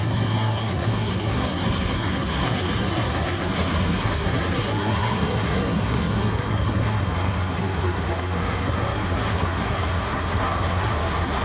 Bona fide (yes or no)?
no